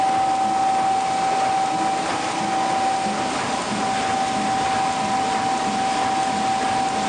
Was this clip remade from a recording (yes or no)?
no